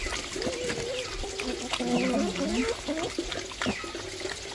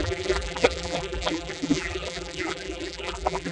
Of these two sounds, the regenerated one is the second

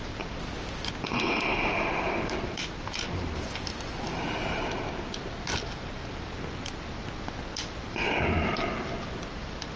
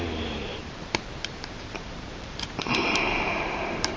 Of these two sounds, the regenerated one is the second